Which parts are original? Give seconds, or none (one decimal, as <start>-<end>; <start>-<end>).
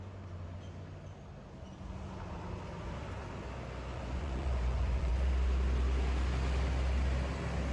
0.0-3.9; 5.1-7.7